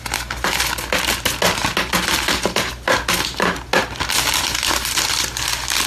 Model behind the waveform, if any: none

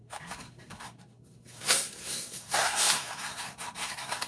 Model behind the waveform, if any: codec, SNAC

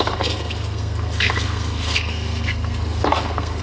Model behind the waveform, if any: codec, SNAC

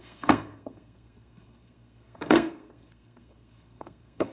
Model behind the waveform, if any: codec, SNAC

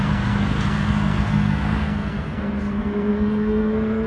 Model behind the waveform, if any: codec, SNAC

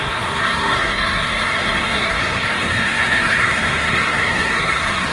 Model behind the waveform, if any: codec, SNAC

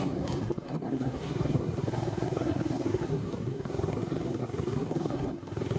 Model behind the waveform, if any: codec, SNAC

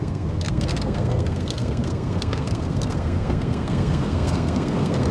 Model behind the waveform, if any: codec, SNAC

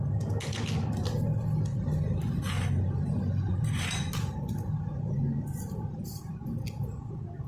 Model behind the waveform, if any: none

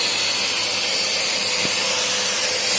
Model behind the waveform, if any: none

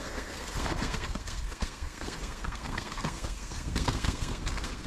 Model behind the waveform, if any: codec, SNAC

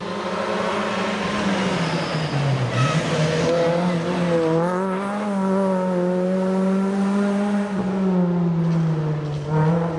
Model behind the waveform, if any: none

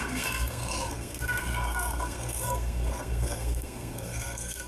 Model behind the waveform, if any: codec, SNAC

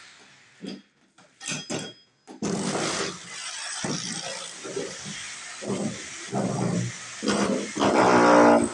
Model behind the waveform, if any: none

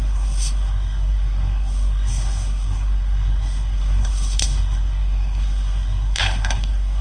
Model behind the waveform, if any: codec, SNAC